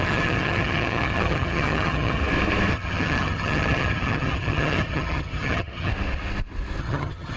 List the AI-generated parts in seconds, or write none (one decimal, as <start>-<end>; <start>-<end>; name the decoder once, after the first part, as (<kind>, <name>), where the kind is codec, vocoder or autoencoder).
0.0-2.2 (vocoder, HiFi-GAN); 2.7-5.9; 6.8-7.4